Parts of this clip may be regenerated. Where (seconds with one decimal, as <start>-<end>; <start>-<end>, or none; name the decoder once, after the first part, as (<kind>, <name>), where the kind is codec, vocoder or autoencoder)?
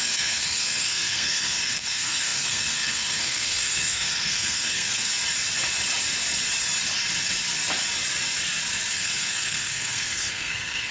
0.0-5.1 (codec, SNAC); 8.9-10.9